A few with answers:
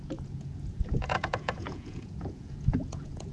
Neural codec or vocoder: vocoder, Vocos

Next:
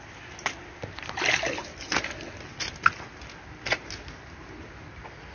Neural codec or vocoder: none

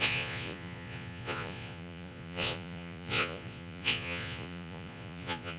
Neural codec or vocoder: vocoder, Vocos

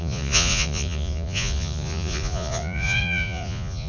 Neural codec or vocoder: vocoder, Vocos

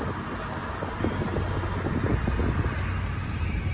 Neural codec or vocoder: none